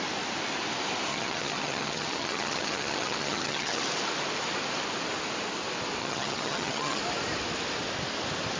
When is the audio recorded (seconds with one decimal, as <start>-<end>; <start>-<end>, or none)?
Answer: 0.0-1.1; 3.8-6.0; 7.0-8.6